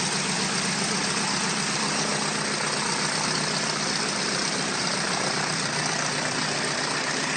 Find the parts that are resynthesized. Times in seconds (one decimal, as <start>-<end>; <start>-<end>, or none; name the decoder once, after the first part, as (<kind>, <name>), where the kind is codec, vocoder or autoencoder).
0.0-2.1 (vocoder, BigVGAN v2); 2.8-7.4